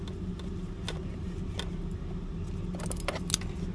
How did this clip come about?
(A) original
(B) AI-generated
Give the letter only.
A